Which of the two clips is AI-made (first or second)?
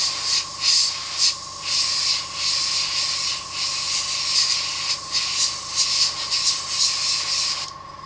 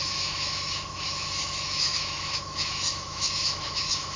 second